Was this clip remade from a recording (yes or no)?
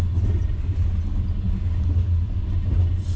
no